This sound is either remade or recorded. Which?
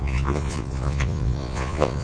remade